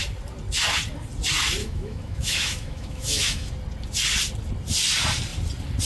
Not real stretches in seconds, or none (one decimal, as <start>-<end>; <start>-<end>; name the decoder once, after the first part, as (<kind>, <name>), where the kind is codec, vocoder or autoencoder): 1.6-3.5 (autoencoder, DAC-VAE)